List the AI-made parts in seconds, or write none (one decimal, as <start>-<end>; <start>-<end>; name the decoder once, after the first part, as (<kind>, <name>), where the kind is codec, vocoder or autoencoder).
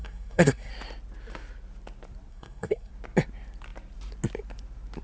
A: 0.0-0.7 (codec, SNAC); 2.3-2.9